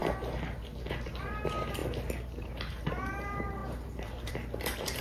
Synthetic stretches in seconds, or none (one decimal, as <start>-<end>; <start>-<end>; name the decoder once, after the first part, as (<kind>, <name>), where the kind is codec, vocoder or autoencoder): 1.1-5.0 (vocoder, BigVGAN v2)